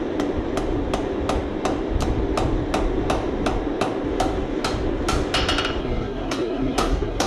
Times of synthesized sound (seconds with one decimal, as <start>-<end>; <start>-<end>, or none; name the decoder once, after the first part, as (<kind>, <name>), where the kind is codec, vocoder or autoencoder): 5.8-7.3 (codec, SNAC)